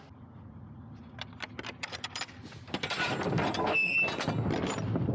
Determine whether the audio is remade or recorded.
recorded